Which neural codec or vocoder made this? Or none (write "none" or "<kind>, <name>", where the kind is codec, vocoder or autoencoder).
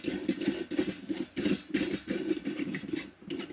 none